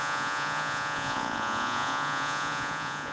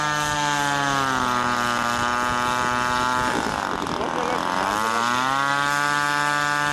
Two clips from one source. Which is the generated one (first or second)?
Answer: first